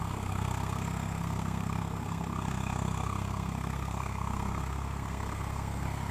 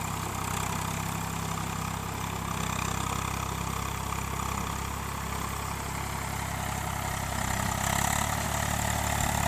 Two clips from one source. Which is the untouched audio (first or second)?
second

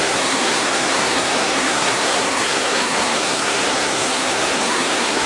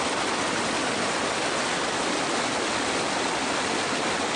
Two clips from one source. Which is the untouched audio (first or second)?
second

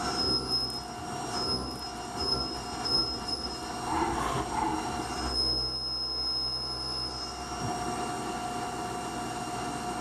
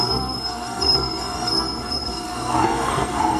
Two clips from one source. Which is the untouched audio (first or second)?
first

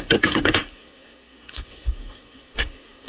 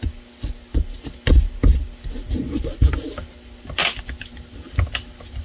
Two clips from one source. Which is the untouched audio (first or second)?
second